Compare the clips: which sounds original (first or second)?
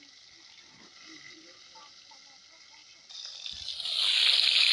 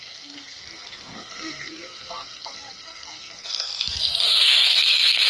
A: first